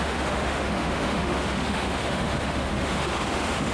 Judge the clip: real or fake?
fake